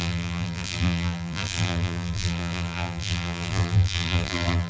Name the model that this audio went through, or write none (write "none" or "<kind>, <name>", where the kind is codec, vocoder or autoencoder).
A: vocoder, BigVGAN v2